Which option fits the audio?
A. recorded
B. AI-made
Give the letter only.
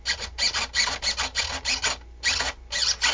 A